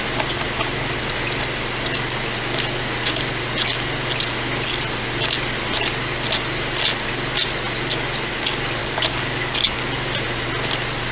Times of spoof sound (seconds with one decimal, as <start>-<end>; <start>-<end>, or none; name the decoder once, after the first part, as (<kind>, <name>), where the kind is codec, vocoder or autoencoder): 8.8-9.8 (codec, DAC)